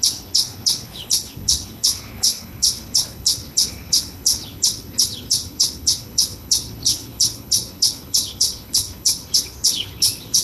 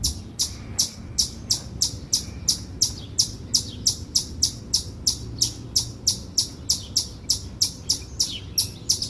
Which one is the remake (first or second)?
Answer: first